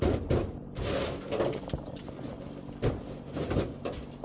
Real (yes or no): yes